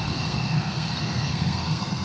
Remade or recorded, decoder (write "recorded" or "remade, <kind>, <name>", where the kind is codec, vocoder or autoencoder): remade, codec, SNAC